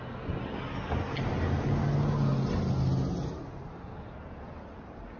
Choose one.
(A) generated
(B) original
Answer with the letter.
B